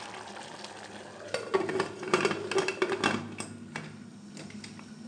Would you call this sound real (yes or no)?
yes